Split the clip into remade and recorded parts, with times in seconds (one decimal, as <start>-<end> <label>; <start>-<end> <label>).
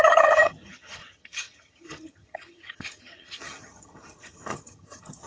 0.0-5.3 remade